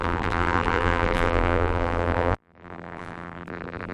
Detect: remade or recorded remade